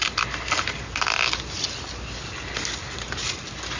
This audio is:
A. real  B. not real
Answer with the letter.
A